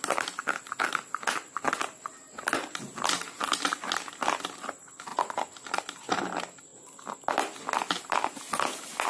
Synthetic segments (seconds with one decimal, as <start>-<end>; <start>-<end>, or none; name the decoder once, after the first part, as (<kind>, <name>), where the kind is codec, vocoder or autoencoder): none